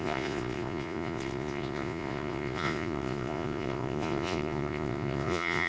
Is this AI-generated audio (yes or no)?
yes